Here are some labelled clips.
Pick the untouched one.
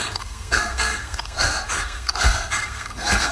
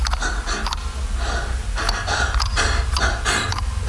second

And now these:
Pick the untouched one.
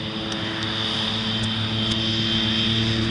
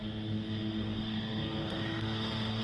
first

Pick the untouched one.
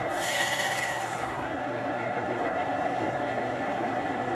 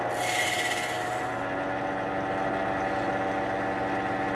second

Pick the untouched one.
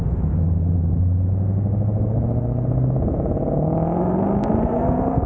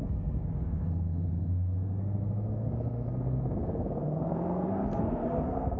first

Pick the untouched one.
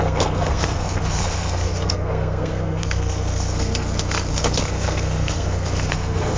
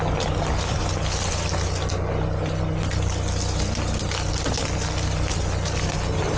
second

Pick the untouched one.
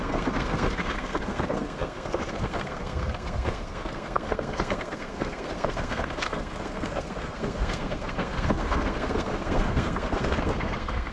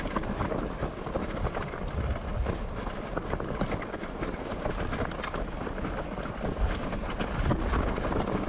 second